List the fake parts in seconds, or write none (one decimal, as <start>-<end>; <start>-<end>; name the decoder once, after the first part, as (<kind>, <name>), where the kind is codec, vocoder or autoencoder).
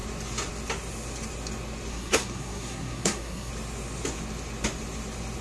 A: 1.9-3.5 (codec, SNAC)